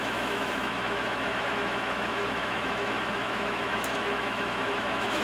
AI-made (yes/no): yes